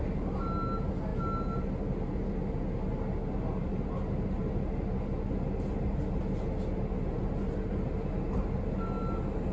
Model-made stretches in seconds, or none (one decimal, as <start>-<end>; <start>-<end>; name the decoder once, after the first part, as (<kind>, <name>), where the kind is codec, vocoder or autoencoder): none